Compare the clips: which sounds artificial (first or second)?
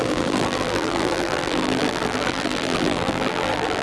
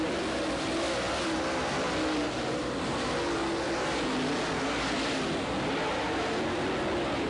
first